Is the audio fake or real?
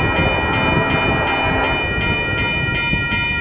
real